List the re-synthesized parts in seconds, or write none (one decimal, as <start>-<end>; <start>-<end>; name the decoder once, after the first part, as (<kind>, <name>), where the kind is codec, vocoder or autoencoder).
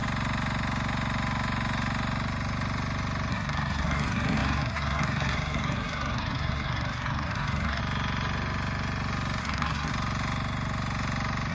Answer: 3.3-7.8 (codec, SNAC); 9.4-9.9